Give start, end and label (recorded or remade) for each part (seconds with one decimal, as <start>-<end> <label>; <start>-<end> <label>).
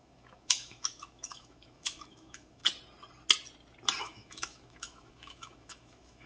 0.0-2.6 remade; 2.6-4.0 recorded; 4.0-6.3 remade